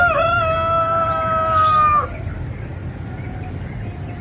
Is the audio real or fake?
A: real